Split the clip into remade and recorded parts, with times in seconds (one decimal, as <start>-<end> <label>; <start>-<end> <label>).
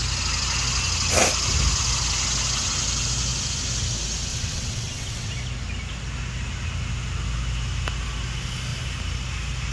0.0-4.3 recorded; 4.3-5.3 remade; 5.3-9.7 recorded